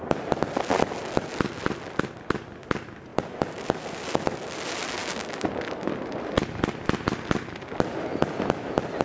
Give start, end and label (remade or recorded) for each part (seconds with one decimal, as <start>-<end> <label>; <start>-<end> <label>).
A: 0.0-9.0 recorded